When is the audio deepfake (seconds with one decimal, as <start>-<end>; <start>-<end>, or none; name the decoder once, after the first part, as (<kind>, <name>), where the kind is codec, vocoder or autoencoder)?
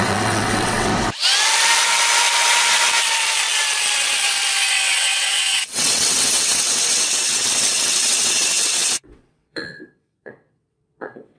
0.0-0.9 (vocoder, WaveNeXt); 4.7-11.4